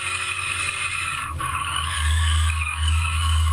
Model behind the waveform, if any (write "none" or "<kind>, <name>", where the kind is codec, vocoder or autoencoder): codec, DAC